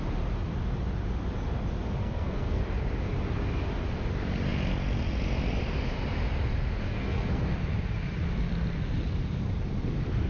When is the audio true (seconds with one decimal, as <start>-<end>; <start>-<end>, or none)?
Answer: 0.0-2.0; 2.6-6.8; 7.5-10.3